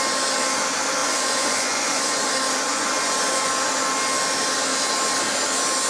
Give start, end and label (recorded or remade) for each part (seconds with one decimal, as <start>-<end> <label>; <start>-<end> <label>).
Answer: 0.0-1.0 recorded; 1.0-2.3 remade; 2.3-2.7 recorded; 2.7-3.5 remade; 3.5-5.9 recorded